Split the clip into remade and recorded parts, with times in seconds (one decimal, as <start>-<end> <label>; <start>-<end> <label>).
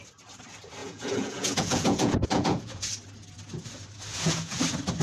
0.0-0.8 recorded; 0.8-2.9 remade; 2.9-4.1 recorded; 4.1-4.6 remade; 4.6-5.0 recorded